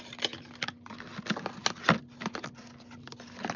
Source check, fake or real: real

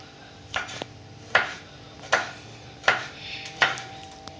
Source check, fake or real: fake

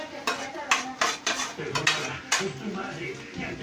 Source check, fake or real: real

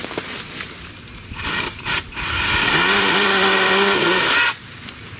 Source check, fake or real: fake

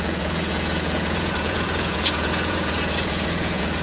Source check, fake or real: fake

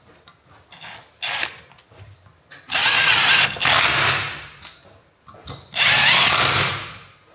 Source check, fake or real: real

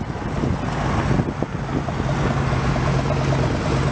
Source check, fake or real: real